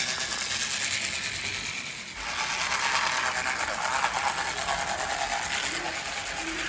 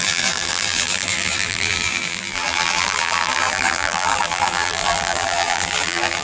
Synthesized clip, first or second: second